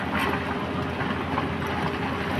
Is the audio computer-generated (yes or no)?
no